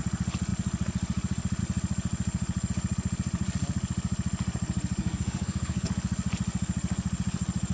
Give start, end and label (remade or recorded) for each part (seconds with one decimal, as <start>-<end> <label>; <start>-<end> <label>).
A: 0.0-5.0 recorded; 5.0-5.9 remade; 5.9-7.7 recorded